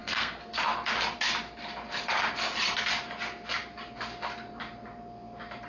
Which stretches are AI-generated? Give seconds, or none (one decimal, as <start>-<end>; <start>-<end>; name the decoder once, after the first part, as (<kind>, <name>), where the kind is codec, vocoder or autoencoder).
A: 0.0-0.5 (codec, SNAC)